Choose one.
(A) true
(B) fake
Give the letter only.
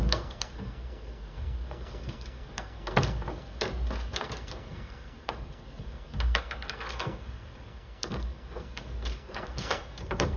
B